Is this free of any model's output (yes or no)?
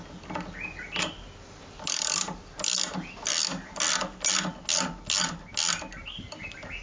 yes